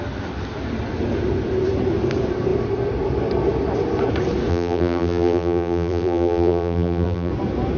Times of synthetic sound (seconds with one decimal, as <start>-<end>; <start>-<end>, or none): 4.5-7.3